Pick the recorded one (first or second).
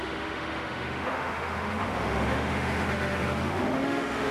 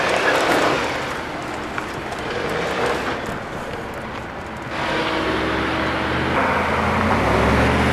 second